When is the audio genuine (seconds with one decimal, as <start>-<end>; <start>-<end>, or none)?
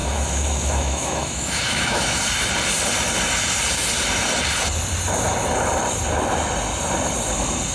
2.2-7.7